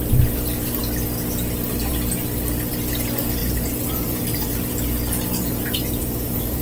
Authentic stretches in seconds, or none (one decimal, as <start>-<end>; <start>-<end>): 0.0-3.4; 4.7-5.4